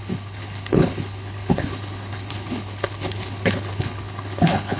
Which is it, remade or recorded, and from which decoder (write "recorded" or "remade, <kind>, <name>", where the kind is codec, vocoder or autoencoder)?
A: remade, codec, HILCodec